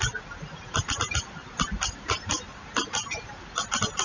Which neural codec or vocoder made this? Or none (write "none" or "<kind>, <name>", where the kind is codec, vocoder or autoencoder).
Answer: none